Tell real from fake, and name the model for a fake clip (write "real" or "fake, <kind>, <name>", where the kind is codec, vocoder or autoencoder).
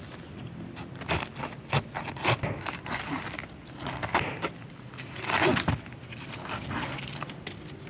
real